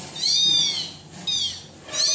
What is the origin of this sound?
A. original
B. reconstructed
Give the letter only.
A